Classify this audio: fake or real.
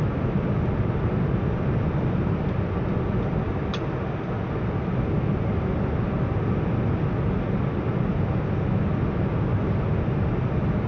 real